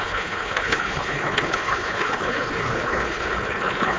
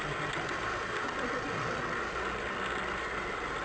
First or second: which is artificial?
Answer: first